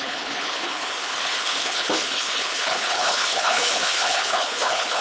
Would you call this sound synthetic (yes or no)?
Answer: yes